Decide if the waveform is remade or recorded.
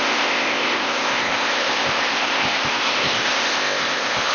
remade